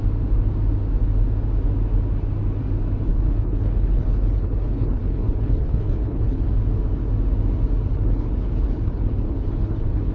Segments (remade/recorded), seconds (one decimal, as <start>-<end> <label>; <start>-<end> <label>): 0.0-3.1 recorded; 3.1-6.5 remade; 6.5-7.9 recorded; 7.9-10.1 remade